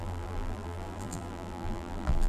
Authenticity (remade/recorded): remade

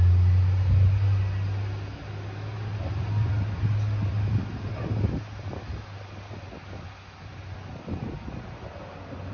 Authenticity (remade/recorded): recorded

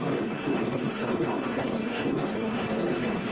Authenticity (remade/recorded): remade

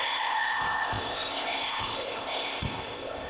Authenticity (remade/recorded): remade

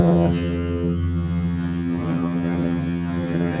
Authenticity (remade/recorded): remade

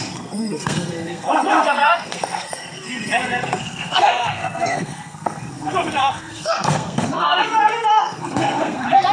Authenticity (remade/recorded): remade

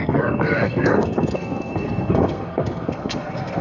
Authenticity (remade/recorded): remade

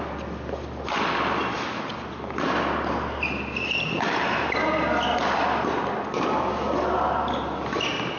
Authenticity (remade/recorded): recorded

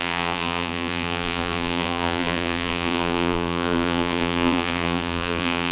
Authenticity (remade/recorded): remade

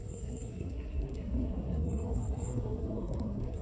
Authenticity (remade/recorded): remade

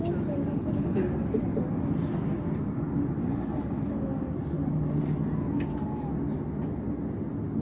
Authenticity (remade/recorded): recorded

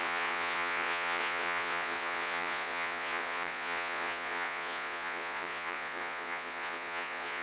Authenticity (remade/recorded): remade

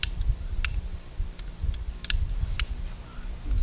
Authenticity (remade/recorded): recorded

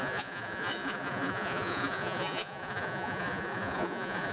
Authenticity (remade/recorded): remade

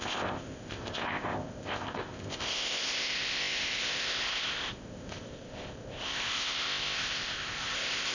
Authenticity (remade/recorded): remade